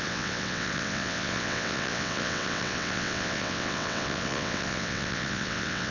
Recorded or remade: remade